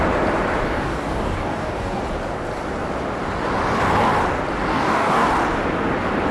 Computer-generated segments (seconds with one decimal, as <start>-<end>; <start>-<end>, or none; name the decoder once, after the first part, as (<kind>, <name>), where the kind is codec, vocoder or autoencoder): 0.6-2.0 (codec, DAC); 4.7-5.3